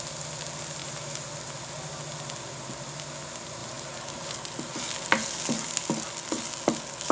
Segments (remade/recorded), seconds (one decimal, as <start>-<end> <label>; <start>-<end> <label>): 0.0-7.1 recorded